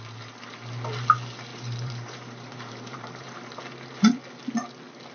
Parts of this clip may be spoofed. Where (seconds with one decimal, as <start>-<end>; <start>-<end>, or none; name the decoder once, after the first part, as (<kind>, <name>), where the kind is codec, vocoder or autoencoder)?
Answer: 1.5-3.6 (vocoder, BigVGAN v2)